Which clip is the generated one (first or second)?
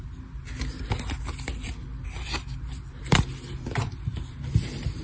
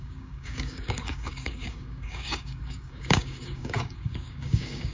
second